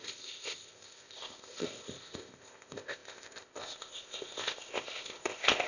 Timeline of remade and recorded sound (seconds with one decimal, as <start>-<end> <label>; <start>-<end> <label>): 0.0-5.7 remade